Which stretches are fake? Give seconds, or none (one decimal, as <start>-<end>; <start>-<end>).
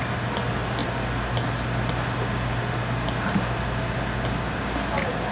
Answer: none